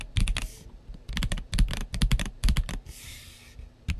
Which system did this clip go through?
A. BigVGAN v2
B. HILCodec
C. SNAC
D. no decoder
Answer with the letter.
A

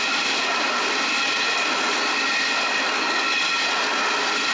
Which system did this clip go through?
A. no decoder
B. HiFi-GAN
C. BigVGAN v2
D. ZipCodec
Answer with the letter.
A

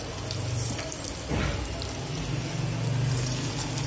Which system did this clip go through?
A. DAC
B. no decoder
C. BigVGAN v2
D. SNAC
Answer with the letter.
B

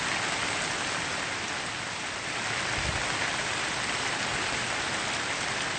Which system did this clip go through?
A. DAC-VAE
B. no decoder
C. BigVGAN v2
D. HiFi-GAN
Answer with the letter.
B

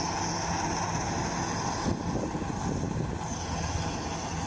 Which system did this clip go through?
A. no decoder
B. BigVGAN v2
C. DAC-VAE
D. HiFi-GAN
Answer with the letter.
A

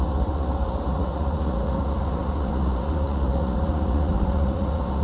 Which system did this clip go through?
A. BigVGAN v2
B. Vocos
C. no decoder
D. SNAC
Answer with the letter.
B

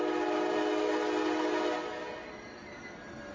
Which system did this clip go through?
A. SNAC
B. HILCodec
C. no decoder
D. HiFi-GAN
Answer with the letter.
C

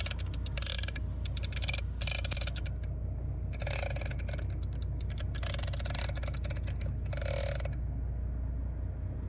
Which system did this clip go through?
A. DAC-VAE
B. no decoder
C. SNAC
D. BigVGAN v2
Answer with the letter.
B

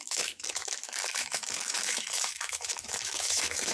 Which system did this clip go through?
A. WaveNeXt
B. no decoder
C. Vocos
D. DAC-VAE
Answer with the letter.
D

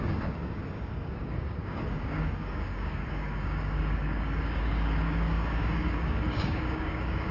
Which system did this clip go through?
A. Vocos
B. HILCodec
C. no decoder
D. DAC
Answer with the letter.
D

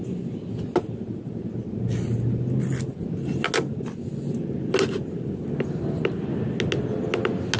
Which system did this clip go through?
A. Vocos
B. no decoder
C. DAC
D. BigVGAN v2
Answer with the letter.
B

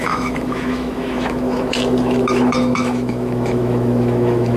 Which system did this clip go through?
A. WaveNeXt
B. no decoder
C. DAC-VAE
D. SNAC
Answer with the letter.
C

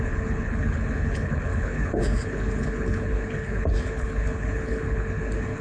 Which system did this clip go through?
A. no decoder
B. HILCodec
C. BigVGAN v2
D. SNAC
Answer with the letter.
B